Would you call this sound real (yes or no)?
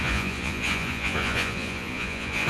no